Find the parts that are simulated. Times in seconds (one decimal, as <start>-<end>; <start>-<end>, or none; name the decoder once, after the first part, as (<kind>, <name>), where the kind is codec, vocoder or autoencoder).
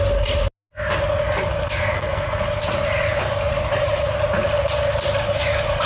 1.8-2.4 (codec, SNAC)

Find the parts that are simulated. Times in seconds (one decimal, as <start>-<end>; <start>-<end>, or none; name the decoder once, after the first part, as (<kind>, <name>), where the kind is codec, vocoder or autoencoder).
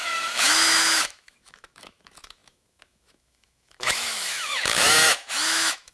0.0-5.9 (autoencoder, DAC-VAE)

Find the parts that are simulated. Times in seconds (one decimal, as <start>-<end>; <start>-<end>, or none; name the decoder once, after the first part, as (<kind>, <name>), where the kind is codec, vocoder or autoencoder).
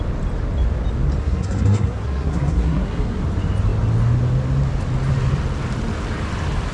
1.2-3.2 (codec, SNAC)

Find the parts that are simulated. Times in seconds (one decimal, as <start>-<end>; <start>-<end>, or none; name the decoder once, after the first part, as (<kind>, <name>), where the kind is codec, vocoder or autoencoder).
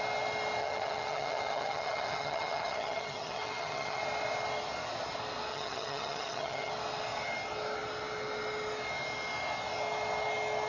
0.6-4.0 (vocoder, HiFi-GAN); 5.5-6.7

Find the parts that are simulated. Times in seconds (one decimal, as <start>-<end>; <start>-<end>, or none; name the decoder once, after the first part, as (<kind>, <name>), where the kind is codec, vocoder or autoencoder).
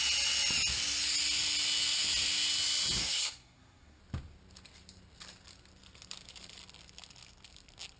3.0-4.0 (codec, SNAC)